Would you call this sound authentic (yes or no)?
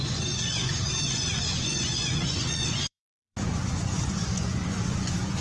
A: no